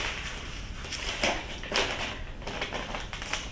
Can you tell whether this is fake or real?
real